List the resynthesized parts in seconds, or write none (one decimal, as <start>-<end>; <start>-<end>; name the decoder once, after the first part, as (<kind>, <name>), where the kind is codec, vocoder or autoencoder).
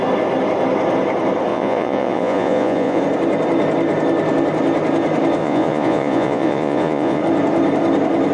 1.5-3.0 (vocoder, Vocos); 5.4-7.2